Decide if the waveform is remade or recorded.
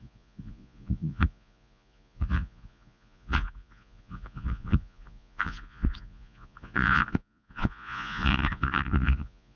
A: remade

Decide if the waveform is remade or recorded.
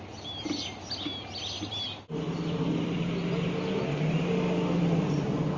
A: recorded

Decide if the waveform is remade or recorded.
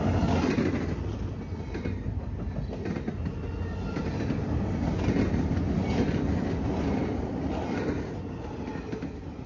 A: recorded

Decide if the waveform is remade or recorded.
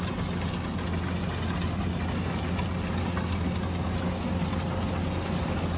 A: recorded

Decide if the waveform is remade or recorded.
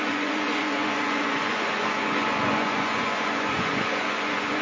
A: remade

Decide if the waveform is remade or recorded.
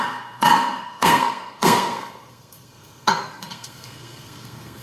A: remade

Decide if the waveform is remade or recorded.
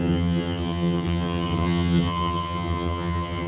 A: remade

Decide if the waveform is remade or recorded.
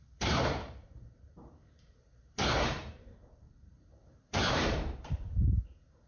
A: remade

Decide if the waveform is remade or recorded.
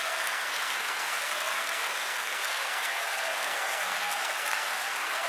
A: remade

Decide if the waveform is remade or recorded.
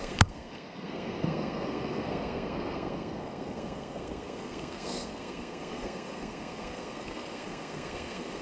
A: remade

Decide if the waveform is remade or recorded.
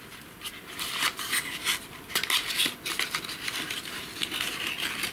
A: recorded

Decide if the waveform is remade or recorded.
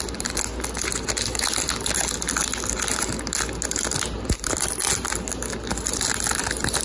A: recorded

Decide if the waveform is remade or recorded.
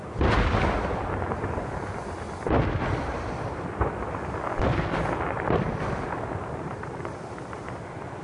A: recorded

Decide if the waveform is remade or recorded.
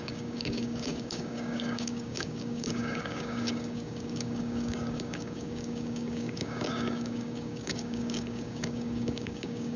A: remade